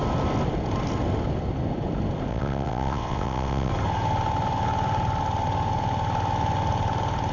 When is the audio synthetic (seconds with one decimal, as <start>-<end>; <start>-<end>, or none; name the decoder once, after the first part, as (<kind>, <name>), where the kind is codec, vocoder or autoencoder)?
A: 2.3-3.7 (vocoder, WaveNeXt)